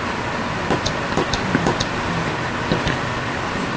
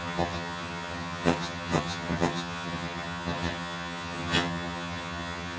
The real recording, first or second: first